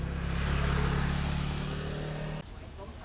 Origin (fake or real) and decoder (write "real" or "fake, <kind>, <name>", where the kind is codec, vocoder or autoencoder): real